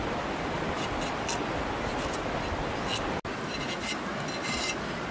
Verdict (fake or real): real